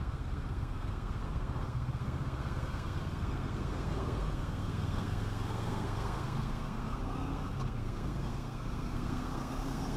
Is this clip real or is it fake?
fake